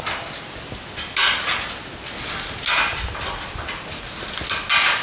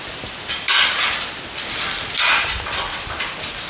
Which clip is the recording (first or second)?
first